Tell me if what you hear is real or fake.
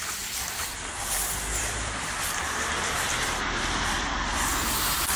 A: fake